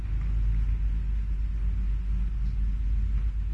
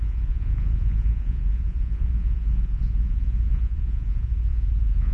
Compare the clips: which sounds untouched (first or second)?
first